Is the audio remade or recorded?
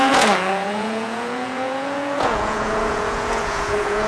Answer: remade